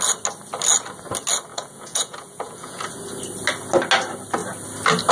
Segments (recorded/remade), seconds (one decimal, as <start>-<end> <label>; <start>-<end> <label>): 0.0-1.5 recorded; 1.5-2.8 remade; 2.8-5.1 recorded